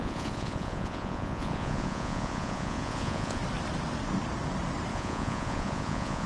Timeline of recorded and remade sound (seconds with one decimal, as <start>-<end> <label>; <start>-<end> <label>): 0.0-3.4 remade; 3.4-4.9 recorded; 4.9-6.3 remade